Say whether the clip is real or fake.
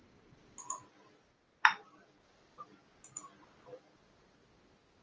real